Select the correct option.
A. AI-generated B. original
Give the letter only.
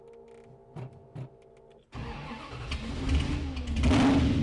B